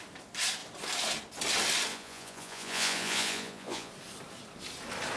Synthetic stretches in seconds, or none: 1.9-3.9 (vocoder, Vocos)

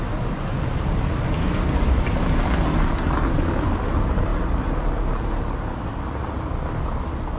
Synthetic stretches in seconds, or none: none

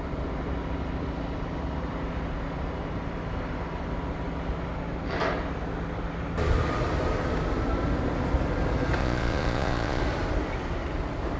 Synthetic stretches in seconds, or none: 9.0-10.0 (vocoder, Vocos)